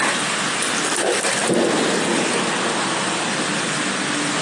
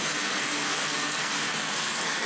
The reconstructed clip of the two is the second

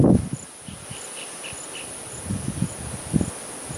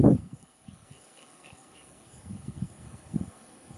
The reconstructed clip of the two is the second